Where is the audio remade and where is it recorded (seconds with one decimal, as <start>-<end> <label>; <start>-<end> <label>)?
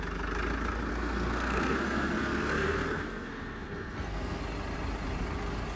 0.0-0.9 recorded; 0.9-4.4 remade; 4.4-5.8 recorded